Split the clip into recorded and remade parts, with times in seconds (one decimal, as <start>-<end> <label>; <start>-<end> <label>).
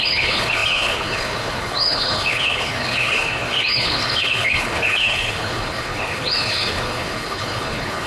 0.0-8.1 remade